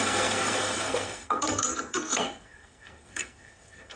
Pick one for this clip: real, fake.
fake